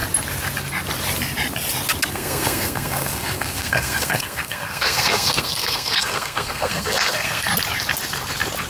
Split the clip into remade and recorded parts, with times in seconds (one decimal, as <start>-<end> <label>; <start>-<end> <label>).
0.0-2.1 recorded; 2.1-7.5 remade; 7.5-8.7 recorded

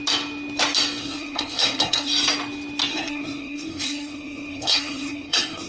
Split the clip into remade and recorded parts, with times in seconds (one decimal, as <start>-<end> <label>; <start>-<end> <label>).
0.0-1.0 recorded; 1.0-2.1 remade; 2.1-2.9 recorded; 2.9-5.7 remade

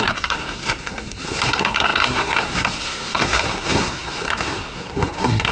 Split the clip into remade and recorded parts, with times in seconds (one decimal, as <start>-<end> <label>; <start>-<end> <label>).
0.0-5.5 remade

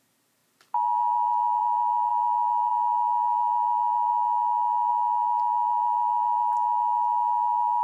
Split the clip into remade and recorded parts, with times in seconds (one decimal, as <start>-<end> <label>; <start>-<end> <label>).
0.0-7.8 recorded